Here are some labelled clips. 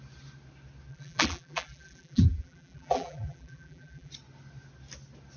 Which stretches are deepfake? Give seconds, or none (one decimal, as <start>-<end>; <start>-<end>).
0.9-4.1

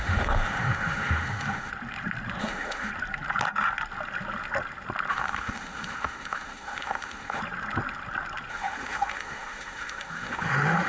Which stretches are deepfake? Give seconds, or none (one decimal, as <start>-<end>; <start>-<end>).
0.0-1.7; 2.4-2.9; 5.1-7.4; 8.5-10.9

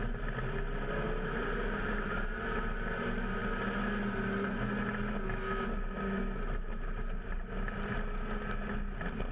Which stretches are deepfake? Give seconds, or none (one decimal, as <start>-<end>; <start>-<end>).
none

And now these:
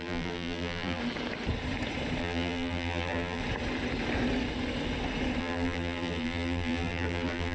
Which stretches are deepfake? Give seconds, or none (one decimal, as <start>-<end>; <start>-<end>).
0.0-1.0; 2.2-3.4; 5.4-7.5